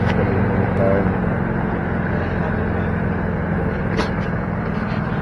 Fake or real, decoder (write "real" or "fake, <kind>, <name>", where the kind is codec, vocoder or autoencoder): real